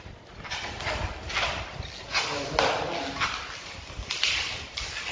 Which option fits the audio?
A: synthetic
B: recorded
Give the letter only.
B